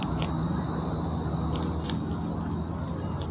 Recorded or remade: recorded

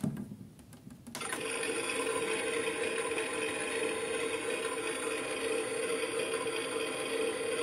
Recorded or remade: recorded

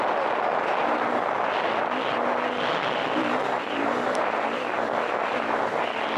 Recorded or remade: recorded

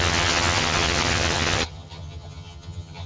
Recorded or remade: remade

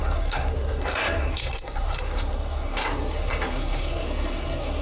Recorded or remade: remade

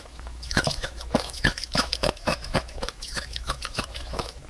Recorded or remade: remade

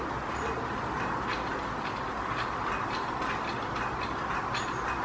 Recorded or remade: recorded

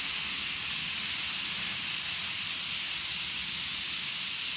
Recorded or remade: recorded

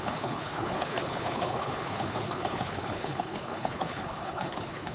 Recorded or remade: remade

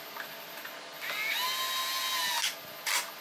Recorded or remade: recorded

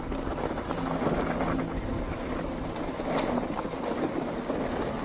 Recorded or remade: recorded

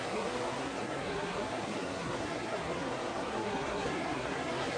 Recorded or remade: remade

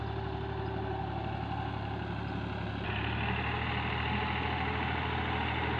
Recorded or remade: recorded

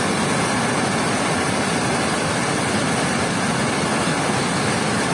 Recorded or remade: recorded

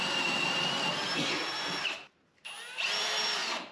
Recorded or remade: recorded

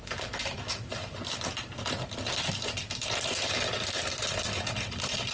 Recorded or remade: recorded